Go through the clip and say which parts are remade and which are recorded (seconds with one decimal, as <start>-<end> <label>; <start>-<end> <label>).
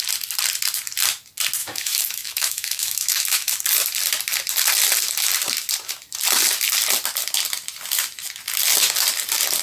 0.0-1.6 recorded; 1.6-3.6 remade; 3.6-9.6 recorded